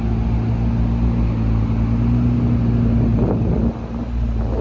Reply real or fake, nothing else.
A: real